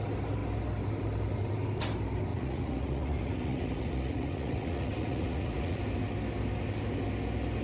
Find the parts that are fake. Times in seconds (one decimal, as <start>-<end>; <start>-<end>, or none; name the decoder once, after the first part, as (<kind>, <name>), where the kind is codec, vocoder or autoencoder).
2.3-5.8 (vocoder, Vocos)